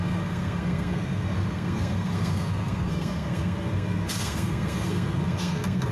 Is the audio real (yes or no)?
no